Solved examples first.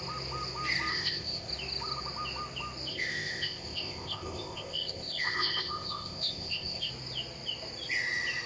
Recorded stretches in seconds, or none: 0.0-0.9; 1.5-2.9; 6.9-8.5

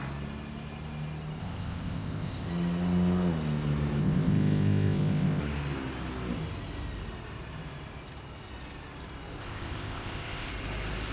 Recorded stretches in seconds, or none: 0.0-1.4; 2.5-4.0; 5.4-9.4; 10.5-11.1

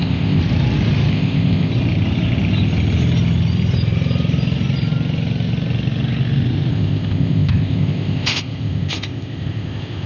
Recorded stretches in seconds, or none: 0.4-1.1; 1.7-6.7